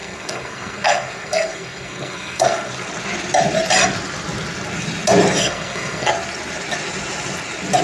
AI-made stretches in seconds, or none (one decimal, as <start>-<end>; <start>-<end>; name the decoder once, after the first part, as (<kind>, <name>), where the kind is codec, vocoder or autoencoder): 0.0-2.7 (codec, SNAC); 5.4-6.1